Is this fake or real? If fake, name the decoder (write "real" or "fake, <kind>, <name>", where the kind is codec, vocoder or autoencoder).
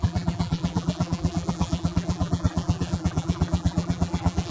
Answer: fake, vocoder, BigVGAN v2